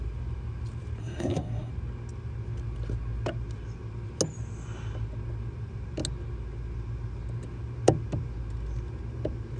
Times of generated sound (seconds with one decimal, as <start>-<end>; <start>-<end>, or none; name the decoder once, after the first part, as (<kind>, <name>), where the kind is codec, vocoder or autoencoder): 1.0-1.7 (codec, SNAC)